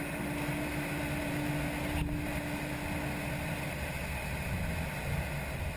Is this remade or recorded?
recorded